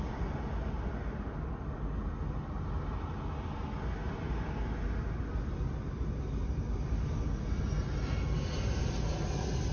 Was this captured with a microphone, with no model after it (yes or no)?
yes